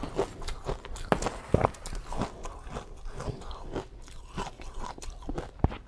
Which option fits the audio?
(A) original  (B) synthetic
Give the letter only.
A